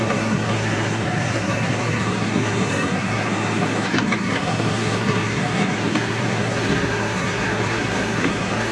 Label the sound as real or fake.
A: fake